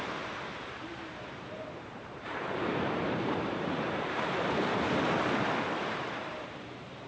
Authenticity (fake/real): fake